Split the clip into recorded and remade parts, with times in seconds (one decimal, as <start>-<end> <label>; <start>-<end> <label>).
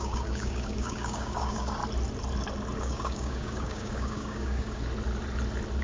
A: 0.0-1.8 remade; 1.8-2.8 recorded; 2.8-4.8 remade; 4.8-5.8 recorded